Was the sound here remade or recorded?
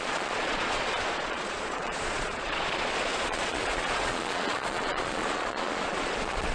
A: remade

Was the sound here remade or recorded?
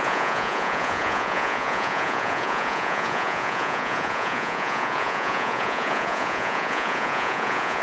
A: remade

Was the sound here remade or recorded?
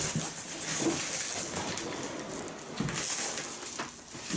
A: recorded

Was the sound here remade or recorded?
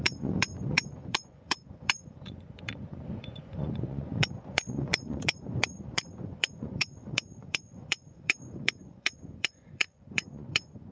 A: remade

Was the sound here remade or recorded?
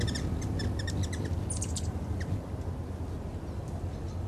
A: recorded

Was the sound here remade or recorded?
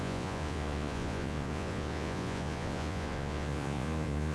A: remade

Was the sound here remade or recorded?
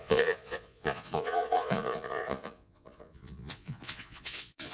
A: remade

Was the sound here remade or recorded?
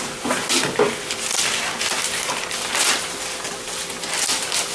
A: recorded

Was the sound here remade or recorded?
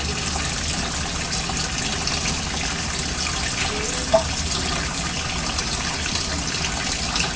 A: recorded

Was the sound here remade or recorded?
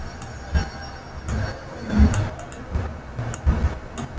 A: recorded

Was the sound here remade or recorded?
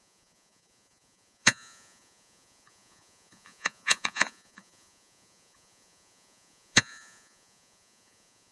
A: remade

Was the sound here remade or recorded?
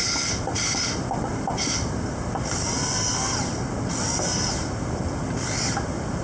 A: recorded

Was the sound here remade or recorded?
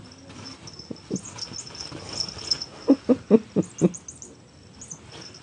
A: recorded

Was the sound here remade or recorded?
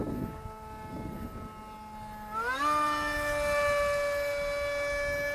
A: recorded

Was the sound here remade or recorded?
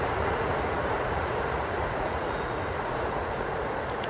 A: remade